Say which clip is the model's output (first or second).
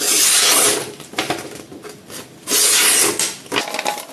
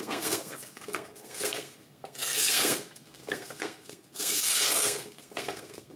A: second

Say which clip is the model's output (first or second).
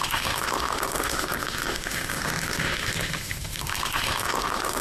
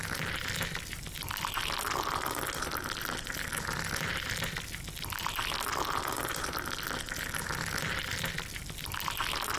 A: first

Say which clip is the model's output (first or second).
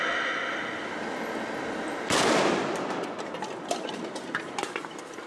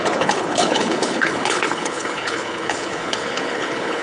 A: second